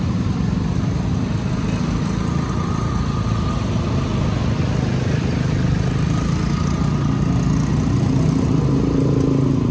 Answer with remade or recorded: recorded